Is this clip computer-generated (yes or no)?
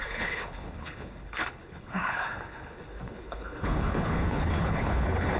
yes